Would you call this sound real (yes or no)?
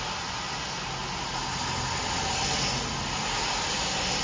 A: yes